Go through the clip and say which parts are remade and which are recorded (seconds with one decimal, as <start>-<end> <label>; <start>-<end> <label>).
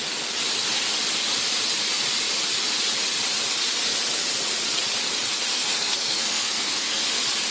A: 0.0-5.5 recorded; 5.5-7.0 remade; 7.0-7.5 recorded